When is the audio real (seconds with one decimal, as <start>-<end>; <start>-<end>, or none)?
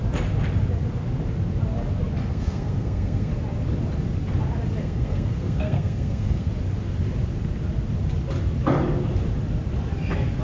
0.0-2.3; 3.3-4.8; 6.5-10.4